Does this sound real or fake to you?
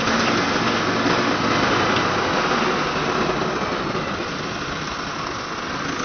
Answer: real